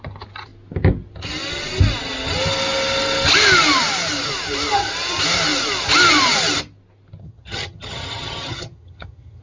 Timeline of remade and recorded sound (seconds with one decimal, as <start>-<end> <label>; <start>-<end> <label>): 0.0-7.2 recorded; 7.2-9.4 remade